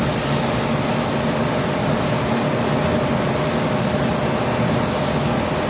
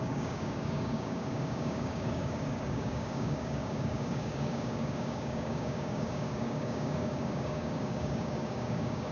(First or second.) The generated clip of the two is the second